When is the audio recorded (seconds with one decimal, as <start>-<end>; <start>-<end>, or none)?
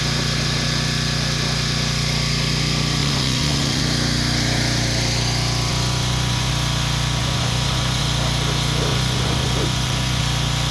0.0-3.0; 3.8-5.7; 6.5-7.2; 8.0-8.9; 10.2-10.7